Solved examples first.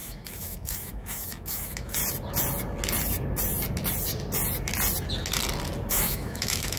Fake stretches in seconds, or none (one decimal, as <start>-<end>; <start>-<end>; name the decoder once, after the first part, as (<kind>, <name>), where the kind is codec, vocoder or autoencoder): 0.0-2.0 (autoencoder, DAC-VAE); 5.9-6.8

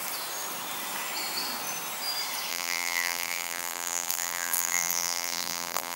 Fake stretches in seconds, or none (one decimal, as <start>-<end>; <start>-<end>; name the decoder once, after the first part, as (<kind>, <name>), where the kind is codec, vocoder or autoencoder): 2.5-6.0 (vocoder, BigVGAN v2)

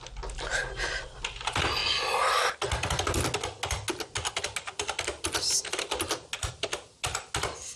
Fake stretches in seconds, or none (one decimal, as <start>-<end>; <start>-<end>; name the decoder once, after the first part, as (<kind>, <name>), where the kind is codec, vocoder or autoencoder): none

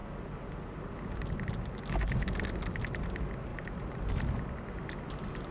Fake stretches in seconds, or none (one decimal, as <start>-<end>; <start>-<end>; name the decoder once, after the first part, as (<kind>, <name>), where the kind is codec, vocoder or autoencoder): 3.5-4.2 (vocoder, BigVGAN v2)

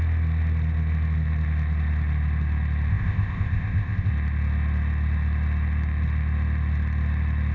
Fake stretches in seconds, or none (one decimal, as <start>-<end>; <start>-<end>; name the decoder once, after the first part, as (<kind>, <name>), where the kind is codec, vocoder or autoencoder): 2.9-4.1 (codec, ZipCodec)

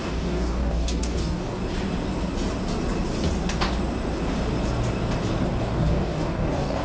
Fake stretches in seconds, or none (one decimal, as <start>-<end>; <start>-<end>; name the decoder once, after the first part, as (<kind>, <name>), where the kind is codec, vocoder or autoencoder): 0.0-1.6 (codec, DAC); 5.6-6.8

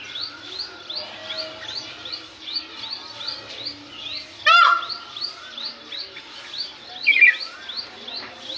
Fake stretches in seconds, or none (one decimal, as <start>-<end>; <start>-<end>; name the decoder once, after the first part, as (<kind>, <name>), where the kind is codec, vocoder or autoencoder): none

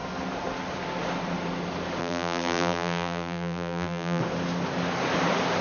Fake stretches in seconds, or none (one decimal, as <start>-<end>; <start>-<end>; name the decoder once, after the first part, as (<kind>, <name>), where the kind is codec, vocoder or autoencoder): 2.0-4.2 (vocoder, BigVGAN v2)